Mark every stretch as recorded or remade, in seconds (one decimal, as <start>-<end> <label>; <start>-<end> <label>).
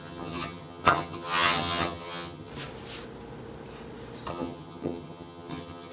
0.0-2.5 remade; 2.5-4.3 recorded; 4.3-5.9 remade